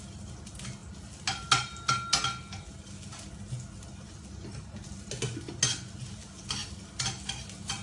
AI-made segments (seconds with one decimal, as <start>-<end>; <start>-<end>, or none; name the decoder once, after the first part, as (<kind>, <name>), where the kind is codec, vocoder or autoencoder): none